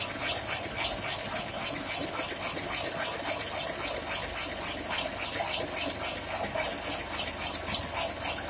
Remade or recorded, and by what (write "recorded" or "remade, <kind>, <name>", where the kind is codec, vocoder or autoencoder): recorded